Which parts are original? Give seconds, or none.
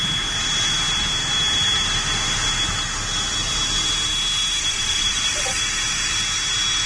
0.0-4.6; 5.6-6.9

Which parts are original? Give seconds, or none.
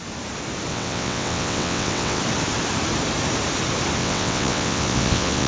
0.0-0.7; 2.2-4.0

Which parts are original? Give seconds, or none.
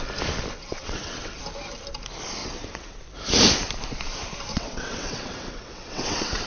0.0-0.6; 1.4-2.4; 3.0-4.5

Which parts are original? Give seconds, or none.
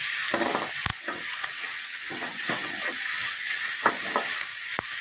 0.0-0.9; 3.9-5.0